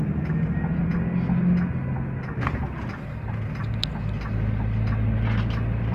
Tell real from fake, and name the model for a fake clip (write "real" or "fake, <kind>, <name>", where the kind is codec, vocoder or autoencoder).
real